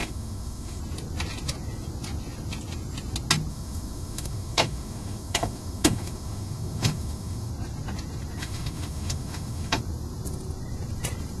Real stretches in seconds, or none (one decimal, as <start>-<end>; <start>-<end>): 0.8-3.5; 7.5-8.4; 9.8-11.4